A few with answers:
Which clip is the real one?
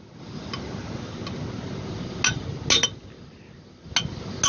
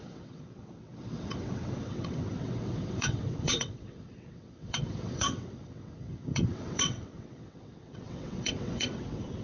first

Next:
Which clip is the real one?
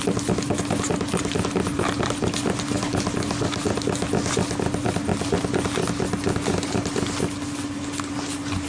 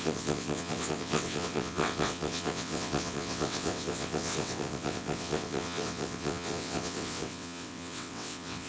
first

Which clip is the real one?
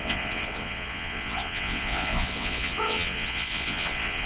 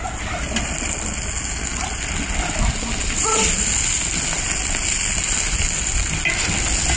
second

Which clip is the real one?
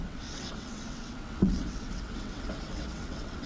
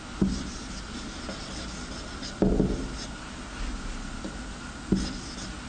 second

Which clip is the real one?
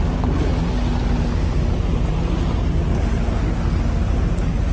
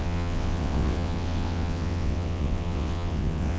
first